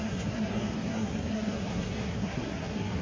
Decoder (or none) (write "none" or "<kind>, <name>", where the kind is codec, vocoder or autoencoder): codec, SNAC